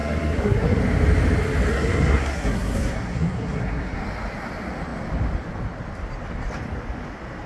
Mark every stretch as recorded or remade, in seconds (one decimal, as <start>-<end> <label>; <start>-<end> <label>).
0.0-0.8 remade; 0.8-1.7 recorded; 1.7-4.0 remade; 4.0-7.5 recorded